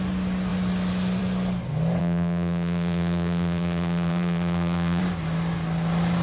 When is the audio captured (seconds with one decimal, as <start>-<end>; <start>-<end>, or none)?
0.0-2.0; 5.0-6.2